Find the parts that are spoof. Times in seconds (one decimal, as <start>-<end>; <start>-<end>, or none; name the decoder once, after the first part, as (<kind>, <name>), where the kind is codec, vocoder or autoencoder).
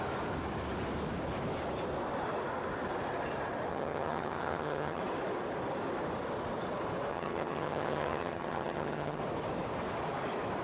3.7-5.0 (vocoder, HiFi-GAN); 7.1-9.2